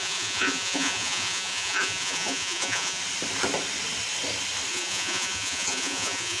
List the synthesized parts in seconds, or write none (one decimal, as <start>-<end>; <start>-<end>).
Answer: 0.0-3.0; 4.7-6.4